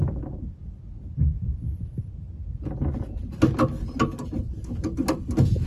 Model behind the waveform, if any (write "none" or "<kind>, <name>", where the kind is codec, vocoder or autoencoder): none